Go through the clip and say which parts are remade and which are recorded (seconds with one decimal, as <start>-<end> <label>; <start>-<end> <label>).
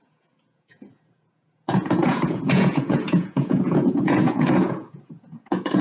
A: 0.0-5.8 remade